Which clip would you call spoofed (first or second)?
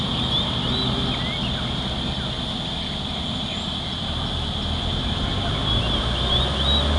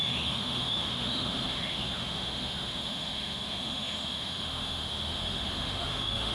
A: second